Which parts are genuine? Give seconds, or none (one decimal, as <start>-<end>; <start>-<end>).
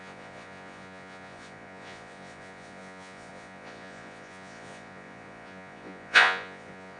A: none